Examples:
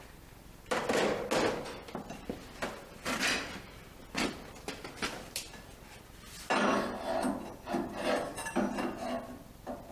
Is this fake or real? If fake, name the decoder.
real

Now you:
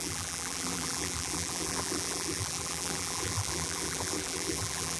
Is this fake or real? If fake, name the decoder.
fake, vocoder, BigVGAN v2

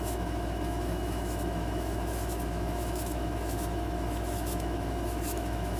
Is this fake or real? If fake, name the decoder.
fake, autoencoder, DAC-VAE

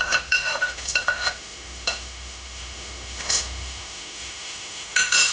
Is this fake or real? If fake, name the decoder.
fake, autoencoder, DAC-VAE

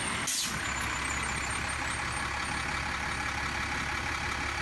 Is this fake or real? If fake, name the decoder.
real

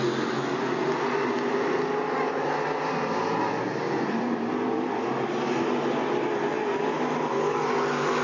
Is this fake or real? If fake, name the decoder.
real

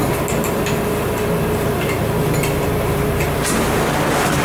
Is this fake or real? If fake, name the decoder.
real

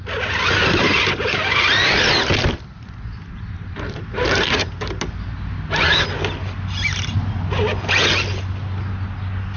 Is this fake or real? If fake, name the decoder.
real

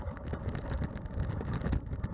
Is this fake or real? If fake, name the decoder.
real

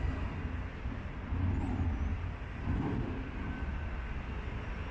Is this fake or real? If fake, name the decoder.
real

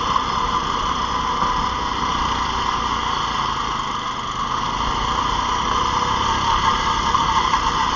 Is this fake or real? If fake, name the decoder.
real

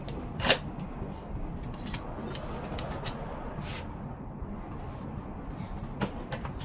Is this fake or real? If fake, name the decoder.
real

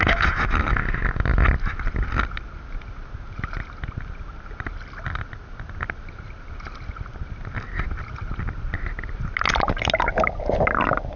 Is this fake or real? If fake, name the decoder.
real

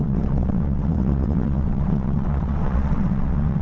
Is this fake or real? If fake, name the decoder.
fake, vocoder, WaveNeXt